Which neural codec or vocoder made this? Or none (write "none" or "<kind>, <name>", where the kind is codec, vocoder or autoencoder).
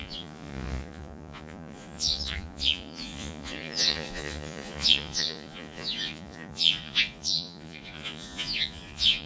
vocoder, Vocos